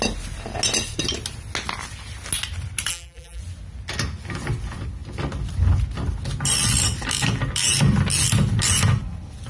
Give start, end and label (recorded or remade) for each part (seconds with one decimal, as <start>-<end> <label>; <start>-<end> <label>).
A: 0.0-2.9 recorded; 2.9-3.4 remade; 3.4-9.5 recorded